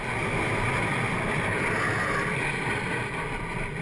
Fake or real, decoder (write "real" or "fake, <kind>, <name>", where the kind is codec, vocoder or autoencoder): real